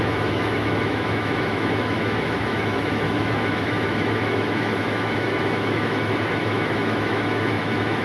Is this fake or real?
fake